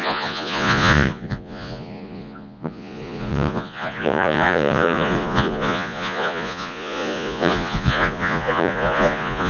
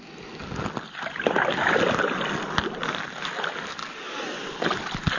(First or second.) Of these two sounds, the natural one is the second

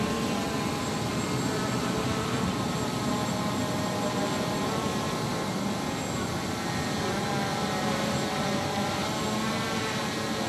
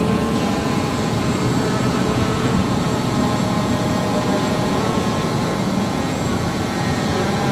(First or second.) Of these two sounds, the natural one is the first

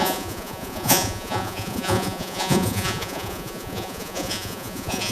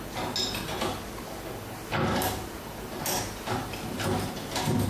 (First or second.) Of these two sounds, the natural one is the second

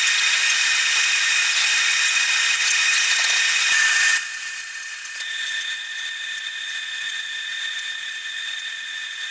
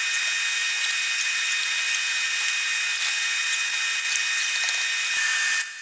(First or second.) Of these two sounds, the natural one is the second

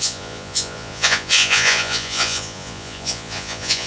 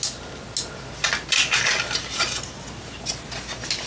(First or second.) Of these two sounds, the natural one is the second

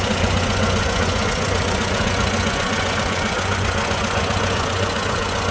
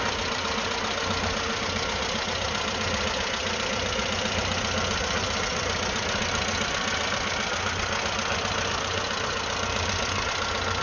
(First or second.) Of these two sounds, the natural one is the second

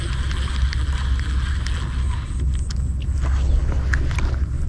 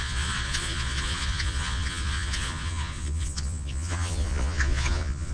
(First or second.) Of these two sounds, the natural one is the first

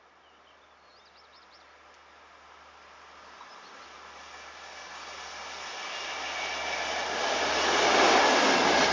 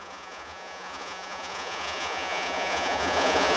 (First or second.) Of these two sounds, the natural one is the first